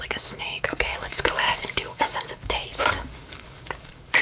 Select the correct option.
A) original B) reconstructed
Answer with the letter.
B